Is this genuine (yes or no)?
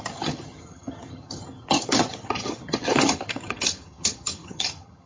no